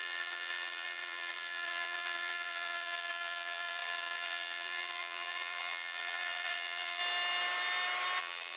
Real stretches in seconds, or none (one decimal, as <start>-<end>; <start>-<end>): 7.0-8.2